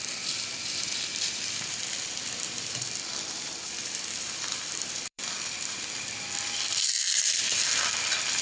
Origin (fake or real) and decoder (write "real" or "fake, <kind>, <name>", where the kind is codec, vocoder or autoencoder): fake, vocoder, BigVGAN v2